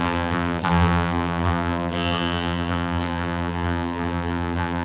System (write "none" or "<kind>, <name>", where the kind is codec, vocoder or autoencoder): vocoder, BigVGAN v2